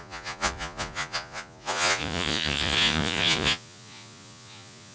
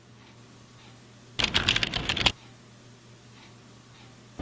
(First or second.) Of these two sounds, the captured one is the second